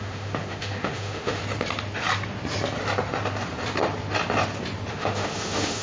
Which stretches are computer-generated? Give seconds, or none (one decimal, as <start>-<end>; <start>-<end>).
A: 0.0-1.4; 4.9-5.8